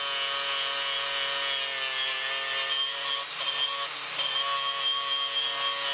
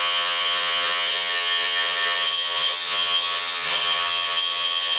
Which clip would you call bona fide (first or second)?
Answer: first